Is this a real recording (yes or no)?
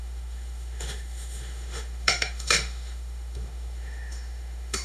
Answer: no